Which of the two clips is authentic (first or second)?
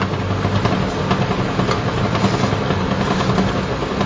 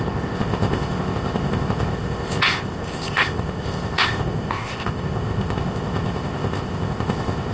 first